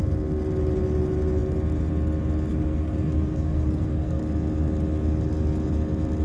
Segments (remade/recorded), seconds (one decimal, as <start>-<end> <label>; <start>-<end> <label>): 0.0-2.5 recorded; 2.5-4.2 remade; 4.2-6.2 recorded